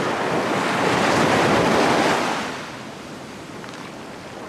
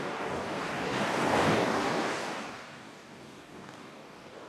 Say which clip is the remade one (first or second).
second